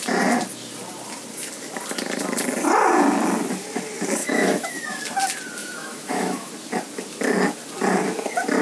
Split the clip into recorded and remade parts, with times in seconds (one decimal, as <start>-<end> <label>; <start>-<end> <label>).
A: 0.0-4.2 recorded; 4.2-5.0 remade; 5.0-5.6 recorded; 5.6-6.5 remade; 6.5-8.6 recorded